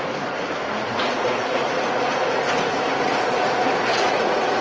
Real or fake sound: fake